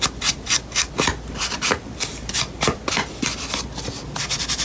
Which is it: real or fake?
fake